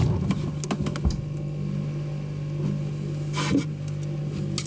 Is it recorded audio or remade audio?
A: recorded